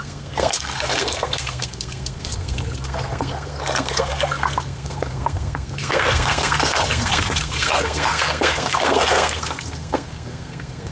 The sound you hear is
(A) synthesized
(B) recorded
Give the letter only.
A